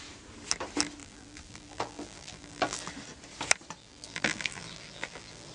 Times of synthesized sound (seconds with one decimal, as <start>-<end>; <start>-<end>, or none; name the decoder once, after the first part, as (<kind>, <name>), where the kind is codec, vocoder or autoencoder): 1.0-2.9 (vocoder, BigVGAN v2); 3.8-5.5